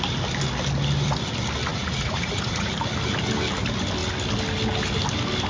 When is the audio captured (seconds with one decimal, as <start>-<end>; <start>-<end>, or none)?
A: 0.0-1.7; 2.7-5.5